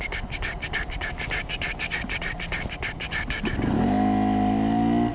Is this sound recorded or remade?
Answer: recorded